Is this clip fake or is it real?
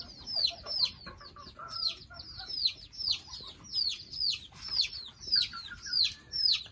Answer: real